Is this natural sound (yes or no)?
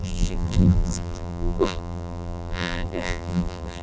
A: no